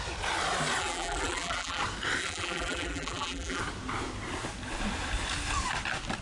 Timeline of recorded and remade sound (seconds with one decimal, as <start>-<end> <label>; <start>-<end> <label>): 0.0-0.8 recorded; 0.8-1.8 remade; 1.8-2.2 recorded; 2.2-3.6 remade; 3.6-6.2 recorded

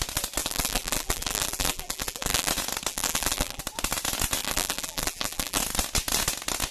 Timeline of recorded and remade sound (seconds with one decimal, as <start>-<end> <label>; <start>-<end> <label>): 0.0-0.4 recorded; 0.4-2.5 remade; 2.5-2.9 recorded; 2.9-3.6 remade; 3.6-4.4 recorded; 4.4-5.6 remade; 5.6-6.7 recorded

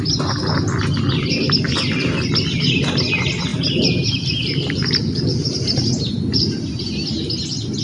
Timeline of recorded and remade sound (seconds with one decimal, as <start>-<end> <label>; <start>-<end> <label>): 0.0-3.5 recorded; 3.5-6.5 remade; 6.5-7.8 recorded

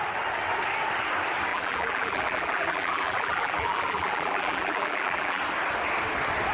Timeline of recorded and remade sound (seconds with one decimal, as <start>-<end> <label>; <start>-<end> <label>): 0.0-1.5 recorded; 1.5-5.4 remade; 5.4-6.5 recorded

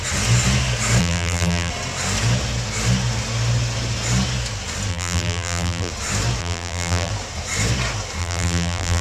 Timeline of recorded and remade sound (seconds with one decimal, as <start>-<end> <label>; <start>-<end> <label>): 0.0-1.0 recorded; 1.0-1.7 remade; 1.7-4.9 recorded; 4.9-5.9 remade; 5.9-6.4 recorded; 6.4-7.1 remade; 7.1-8.2 recorded; 8.2-9.0 remade

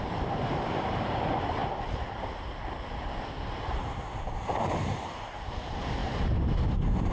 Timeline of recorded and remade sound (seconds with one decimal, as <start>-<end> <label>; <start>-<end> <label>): 0.0-1.6 remade; 1.6-4.8 recorded; 4.8-7.1 remade

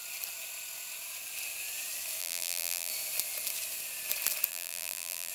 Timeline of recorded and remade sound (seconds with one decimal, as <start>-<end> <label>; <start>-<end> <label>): 0.0-2.2 recorded; 2.2-2.9 remade; 2.9-4.5 recorded; 4.5-5.3 remade

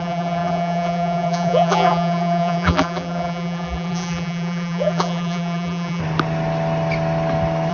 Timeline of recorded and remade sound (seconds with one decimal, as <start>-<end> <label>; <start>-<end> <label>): 0.0-6.0 remade; 6.0-7.7 recorded